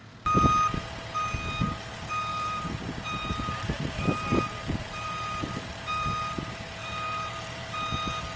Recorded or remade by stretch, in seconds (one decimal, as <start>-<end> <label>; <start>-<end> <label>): 0.0-2.3 recorded; 2.3-6.3 remade; 6.3-6.8 recorded; 6.8-7.7 remade; 7.7-8.4 recorded